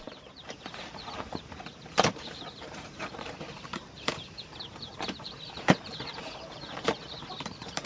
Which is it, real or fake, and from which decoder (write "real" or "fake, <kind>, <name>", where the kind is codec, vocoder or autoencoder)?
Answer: fake, vocoder, BigVGAN v2